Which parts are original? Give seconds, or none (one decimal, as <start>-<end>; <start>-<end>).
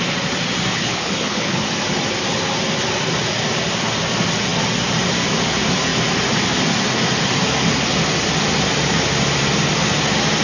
0.0-0.7; 1.7-10.4